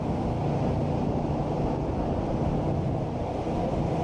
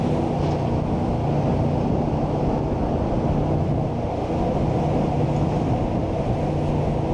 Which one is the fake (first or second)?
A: first